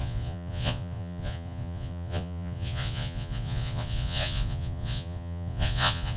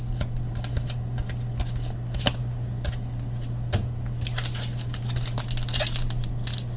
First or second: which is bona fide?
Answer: second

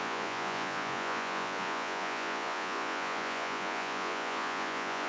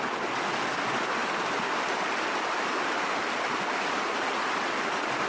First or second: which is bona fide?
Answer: second